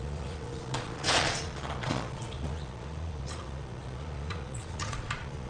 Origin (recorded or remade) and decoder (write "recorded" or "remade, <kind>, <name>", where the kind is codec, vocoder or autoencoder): remade, vocoder, Vocos